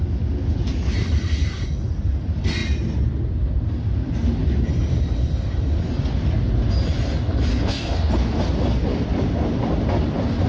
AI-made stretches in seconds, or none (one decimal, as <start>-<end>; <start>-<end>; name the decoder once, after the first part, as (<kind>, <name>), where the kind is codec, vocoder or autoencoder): 7.5-8.1 (codec, DAC)